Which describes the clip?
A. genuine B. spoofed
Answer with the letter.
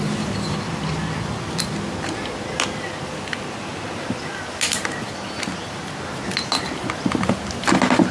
A